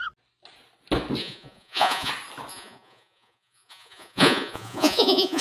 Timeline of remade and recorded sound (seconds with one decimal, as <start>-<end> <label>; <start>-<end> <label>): 0.0-1.2 recorded; 1.2-2.1 remade; 2.1-2.5 recorded; 2.5-5.4 remade